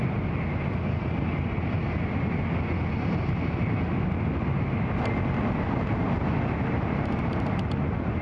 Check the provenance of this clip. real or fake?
real